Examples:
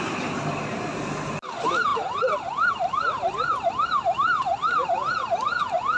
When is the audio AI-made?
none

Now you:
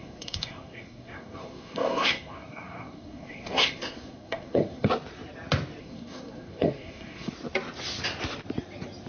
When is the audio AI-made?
0.0-4.9; 5.8-7.3

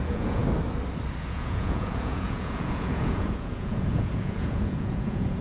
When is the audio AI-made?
0.0-0.4; 1.2-5.4

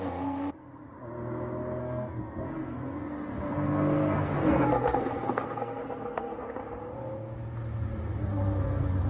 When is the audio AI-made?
0.0-0.7; 1.8-6.6; 8.2-9.1